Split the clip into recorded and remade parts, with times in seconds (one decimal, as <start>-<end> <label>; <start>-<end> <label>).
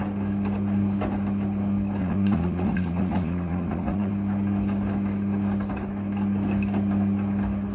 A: 0.0-2.0 recorded; 2.0-4.1 remade; 4.1-7.7 recorded